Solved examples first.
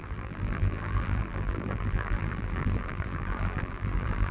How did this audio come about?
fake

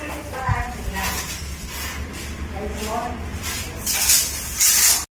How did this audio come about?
real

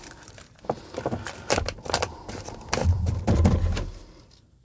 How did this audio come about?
fake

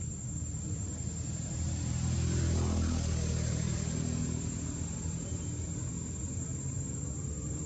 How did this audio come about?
real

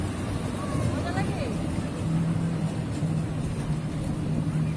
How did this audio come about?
real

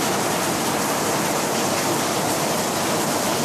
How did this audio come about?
fake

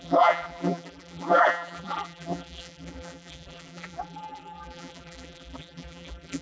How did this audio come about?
fake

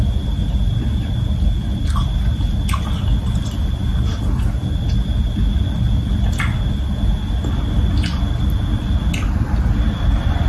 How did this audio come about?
real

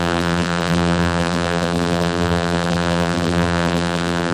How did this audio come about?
fake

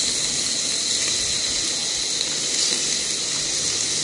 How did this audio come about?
real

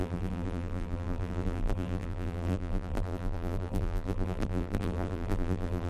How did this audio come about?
fake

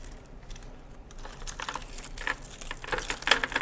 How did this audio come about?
real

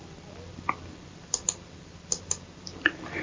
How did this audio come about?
fake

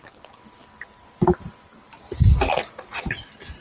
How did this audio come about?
fake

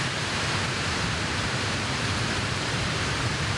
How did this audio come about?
fake